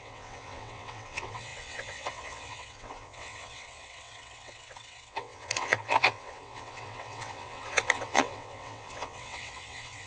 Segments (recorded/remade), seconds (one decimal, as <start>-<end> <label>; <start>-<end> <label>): 0.0-10.1 remade

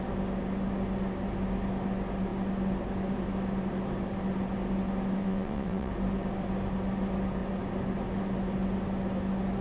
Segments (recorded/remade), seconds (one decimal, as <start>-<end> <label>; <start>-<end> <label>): 0.0-5.2 recorded; 5.2-5.9 remade; 5.9-9.6 recorded

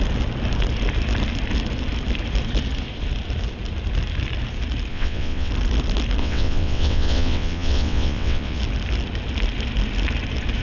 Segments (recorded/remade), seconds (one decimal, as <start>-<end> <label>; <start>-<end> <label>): 0.0-4.9 recorded; 4.9-5.5 remade; 5.5-6.2 recorded; 6.2-8.6 remade; 8.6-10.6 recorded